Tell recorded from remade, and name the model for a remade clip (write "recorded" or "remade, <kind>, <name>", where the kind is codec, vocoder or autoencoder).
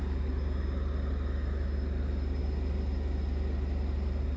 recorded